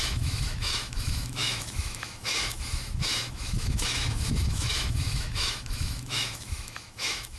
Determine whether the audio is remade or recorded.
remade